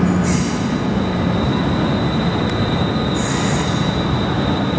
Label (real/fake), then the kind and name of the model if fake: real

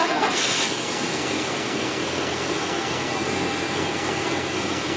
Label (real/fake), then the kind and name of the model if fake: fake, codec, SNAC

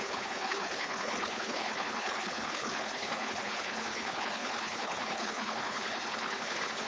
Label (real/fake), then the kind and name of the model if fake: fake, codec, HILCodec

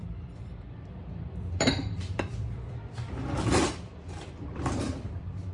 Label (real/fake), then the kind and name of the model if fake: fake, vocoder, BigVGAN v2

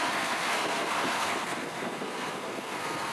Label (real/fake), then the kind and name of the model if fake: fake, codec, SNAC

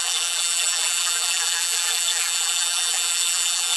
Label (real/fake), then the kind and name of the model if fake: fake, vocoder, BigVGAN v2